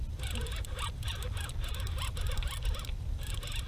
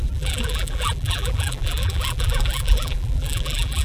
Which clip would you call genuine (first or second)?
first